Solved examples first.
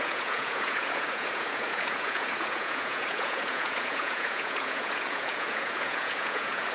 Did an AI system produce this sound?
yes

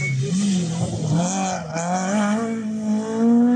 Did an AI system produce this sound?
no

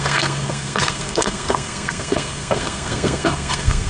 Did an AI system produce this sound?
yes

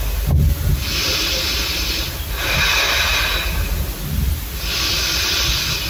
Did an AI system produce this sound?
no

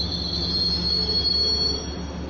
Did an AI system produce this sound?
no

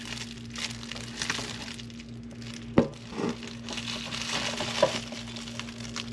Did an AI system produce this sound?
no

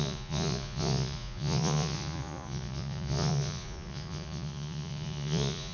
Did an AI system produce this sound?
yes